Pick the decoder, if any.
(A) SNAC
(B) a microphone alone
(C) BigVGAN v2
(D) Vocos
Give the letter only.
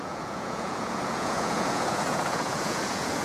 D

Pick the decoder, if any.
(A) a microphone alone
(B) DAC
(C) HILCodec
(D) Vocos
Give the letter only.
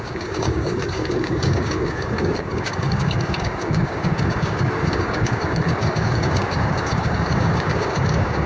B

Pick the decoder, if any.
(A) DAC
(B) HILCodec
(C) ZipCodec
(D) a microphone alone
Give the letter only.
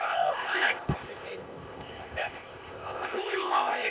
C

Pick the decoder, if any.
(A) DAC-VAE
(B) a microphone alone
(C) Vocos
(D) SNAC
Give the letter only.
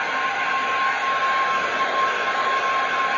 B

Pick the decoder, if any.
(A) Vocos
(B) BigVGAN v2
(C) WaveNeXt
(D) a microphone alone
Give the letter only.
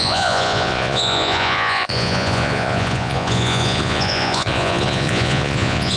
A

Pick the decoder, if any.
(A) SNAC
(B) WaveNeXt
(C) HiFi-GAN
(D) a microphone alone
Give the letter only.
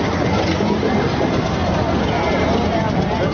D